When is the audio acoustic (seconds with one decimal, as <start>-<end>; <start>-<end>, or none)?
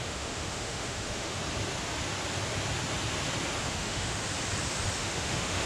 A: 1.4-3.6; 4.2-5.0